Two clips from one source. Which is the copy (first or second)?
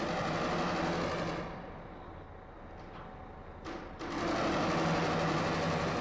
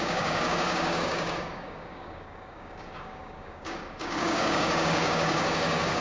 second